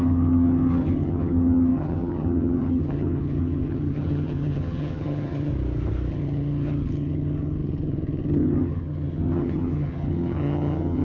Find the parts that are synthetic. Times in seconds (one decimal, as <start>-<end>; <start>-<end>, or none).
0.0-5.5; 6.1-11.0